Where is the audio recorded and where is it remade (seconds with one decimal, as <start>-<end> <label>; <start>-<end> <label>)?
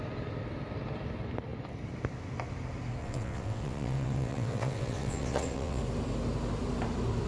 0.0-3.0 recorded; 3.0-5.8 remade; 5.8-7.3 recorded